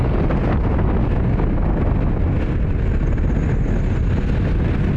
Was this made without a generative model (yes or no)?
yes